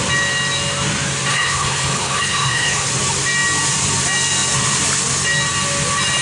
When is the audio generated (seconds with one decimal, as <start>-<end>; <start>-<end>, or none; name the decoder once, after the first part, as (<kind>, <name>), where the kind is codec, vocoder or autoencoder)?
1.3-2.9 (codec, HILCodec)